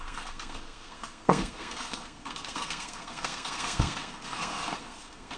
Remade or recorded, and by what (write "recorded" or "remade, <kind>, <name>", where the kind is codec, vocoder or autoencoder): remade, codec, SNAC